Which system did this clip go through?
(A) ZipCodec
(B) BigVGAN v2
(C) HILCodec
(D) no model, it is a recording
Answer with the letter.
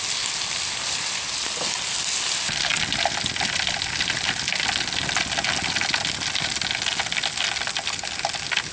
D